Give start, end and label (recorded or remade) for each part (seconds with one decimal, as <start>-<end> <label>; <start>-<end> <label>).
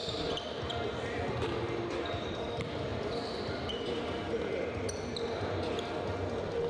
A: 0.0-2.9 recorded; 2.9-3.7 remade; 3.7-6.7 recorded